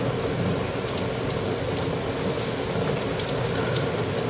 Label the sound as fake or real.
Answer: real